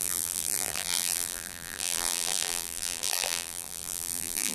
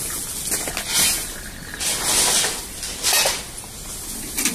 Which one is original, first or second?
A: second